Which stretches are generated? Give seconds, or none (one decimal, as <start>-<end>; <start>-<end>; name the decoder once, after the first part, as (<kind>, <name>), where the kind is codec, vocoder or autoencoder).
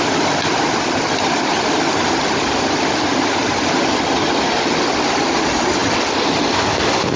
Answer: none